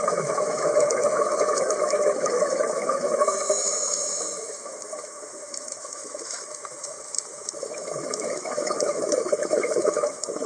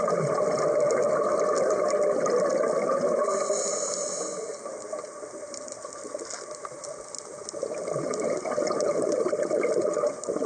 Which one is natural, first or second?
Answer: second